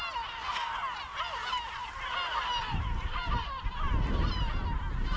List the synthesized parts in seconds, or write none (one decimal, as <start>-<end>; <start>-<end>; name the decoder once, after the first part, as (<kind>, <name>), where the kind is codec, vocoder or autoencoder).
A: none